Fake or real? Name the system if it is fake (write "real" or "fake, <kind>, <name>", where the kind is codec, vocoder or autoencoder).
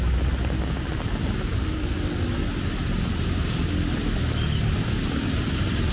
real